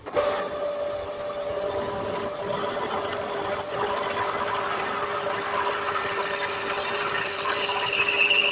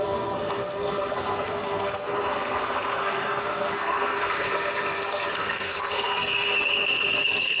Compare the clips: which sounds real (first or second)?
first